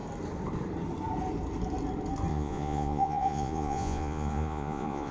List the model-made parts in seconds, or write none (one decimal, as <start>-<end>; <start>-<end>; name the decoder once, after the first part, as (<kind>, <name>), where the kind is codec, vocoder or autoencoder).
2.3-5.1 (vocoder, Vocos)